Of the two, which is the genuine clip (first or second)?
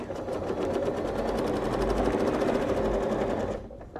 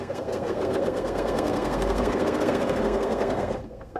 first